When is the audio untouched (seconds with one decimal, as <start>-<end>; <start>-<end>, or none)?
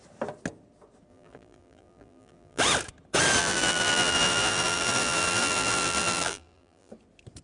0.0-1.1; 2.6-3.4; 6.9-7.4